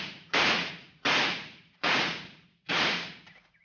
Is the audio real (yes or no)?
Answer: no